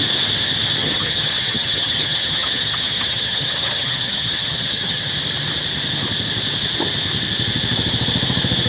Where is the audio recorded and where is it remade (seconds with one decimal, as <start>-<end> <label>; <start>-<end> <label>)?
0.0-0.8 recorded; 0.8-5.0 remade; 5.0-8.7 recorded